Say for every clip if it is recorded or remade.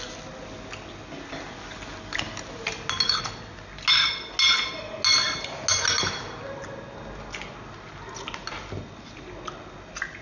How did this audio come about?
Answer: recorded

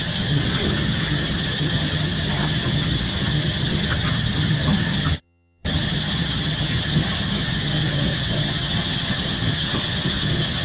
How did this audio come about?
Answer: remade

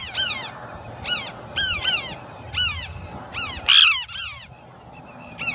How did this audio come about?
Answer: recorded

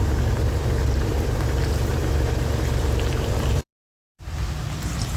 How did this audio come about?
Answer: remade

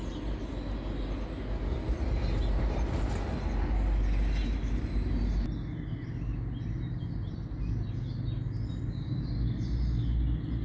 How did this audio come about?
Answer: recorded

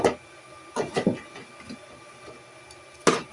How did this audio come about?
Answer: recorded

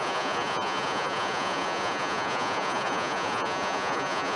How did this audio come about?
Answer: remade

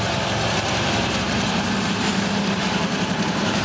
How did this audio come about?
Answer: remade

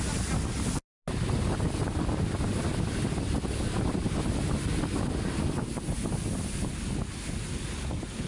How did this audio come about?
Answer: recorded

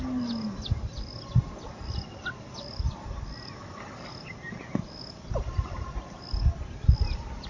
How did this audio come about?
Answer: recorded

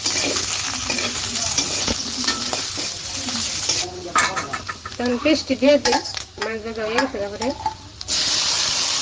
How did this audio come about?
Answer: remade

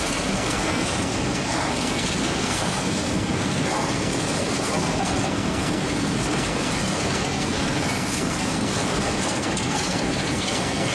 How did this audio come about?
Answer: remade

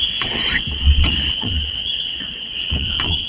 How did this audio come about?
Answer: remade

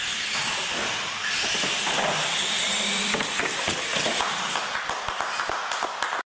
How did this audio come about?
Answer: recorded